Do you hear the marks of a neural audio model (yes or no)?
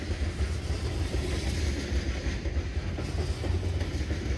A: no